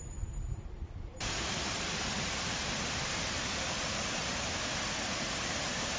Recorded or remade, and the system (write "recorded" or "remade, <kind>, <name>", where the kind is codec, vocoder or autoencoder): recorded